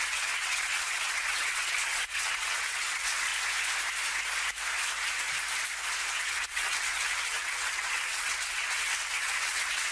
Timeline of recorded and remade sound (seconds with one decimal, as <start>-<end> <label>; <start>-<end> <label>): 0.0-3.3 remade; 3.3-6.3 recorded; 6.3-9.9 remade